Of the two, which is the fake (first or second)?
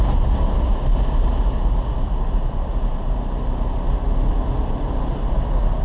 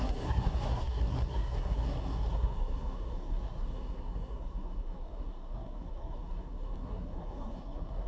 second